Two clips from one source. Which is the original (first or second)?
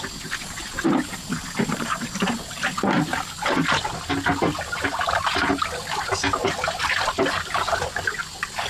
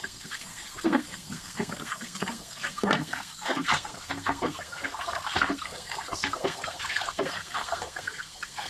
first